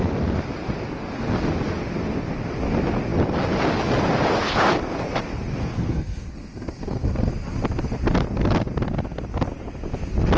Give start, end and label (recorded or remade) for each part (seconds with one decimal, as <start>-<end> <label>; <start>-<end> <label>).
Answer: 0.0-5.6 recorded; 5.6-7.3 remade; 7.3-10.4 recorded